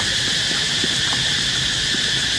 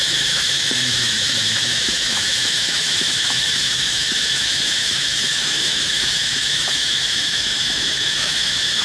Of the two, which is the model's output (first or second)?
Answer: second